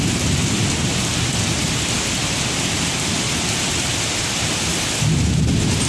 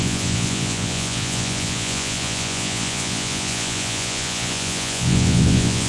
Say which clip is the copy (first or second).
second